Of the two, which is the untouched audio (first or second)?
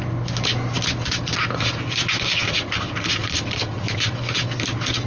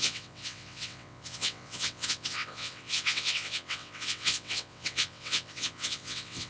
first